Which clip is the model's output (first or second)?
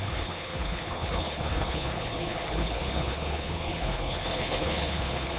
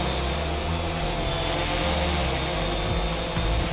first